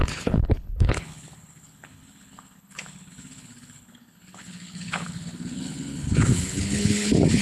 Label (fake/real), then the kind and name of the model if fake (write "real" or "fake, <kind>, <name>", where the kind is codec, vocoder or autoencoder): fake, codec, HILCodec